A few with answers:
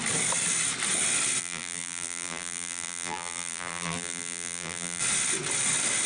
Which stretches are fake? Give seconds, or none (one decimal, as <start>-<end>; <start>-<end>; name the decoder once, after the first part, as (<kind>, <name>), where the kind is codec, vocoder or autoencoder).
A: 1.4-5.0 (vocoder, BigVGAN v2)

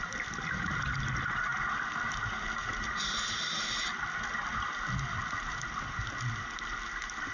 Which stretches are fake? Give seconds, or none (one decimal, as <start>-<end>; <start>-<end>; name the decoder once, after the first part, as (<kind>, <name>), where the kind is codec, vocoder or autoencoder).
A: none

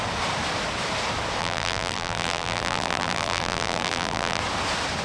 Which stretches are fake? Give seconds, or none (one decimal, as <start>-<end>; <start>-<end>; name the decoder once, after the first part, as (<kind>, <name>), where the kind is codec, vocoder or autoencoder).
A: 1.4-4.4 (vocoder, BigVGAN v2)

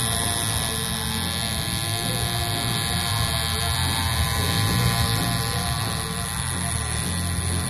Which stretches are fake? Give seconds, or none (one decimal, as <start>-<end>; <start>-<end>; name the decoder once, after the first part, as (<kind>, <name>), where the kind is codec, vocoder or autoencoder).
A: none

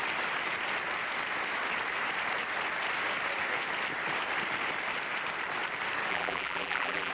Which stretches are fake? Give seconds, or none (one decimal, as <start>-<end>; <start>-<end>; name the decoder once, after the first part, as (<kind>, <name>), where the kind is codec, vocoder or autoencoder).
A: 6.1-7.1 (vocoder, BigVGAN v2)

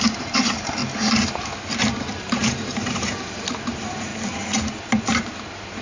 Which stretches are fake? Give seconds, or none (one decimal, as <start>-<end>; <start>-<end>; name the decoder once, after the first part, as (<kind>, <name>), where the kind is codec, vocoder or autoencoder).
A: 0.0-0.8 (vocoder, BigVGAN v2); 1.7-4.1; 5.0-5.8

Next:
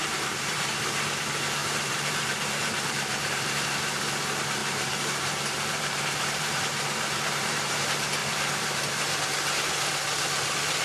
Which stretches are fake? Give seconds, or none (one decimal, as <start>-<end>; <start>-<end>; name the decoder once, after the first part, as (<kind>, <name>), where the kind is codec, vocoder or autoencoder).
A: 0.0-0.7 (vocoder, BigVGAN v2); 1.6-4.0; 4.6-7.8; 8.2-8.9

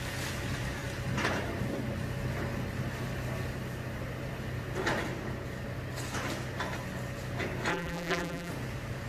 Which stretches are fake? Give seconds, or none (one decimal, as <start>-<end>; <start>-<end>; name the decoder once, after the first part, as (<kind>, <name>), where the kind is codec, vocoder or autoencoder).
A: 7.7-8.5 (vocoder, BigVGAN v2)